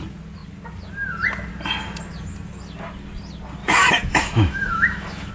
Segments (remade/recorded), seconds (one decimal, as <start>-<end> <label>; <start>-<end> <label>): 0.0-3.6 recorded; 3.6-5.3 remade